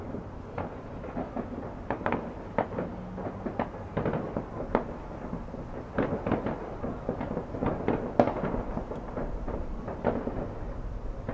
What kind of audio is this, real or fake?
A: real